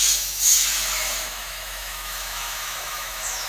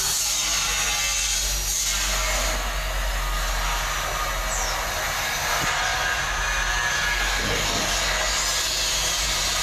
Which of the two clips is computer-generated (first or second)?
first